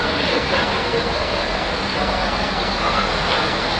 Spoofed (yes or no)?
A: yes